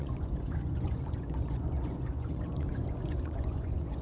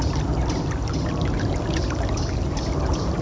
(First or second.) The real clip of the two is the second